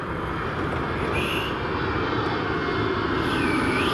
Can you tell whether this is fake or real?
real